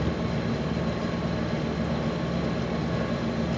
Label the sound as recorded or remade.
recorded